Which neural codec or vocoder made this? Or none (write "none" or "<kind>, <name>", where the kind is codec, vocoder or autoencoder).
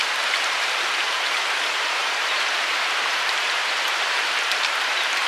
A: vocoder, BigVGAN v2